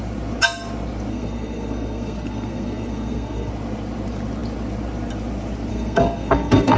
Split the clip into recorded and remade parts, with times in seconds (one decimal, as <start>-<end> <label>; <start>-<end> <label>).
0.0-1.1 recorded; 1.1-3.5 remade; 3.5-5.7 recorded; 5.7-6.8 remade